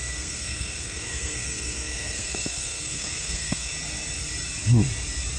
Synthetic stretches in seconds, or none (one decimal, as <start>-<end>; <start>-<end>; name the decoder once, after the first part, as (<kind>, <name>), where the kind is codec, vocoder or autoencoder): 0.0-3.7 (codec, SNAC)